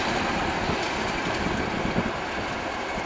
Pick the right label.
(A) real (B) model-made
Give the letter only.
A